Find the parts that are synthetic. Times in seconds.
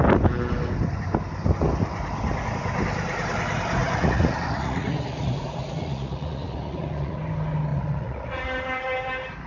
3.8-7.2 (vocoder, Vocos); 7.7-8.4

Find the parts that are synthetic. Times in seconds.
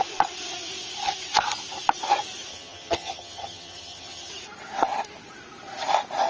2.5-4.3 (vocoder, HiFi-GAN)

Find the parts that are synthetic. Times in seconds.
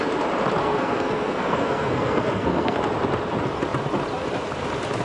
0.6-2.8 (codec, SNAC)